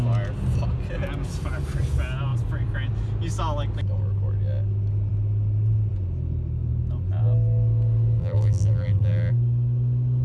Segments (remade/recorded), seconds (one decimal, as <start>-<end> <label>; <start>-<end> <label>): 0.0-8.2 recorded; 8.2-9.3 remade; 9.3-10.2 recorded